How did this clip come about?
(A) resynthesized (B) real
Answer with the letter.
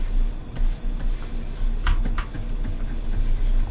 B